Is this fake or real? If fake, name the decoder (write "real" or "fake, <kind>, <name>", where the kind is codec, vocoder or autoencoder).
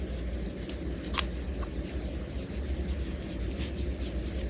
real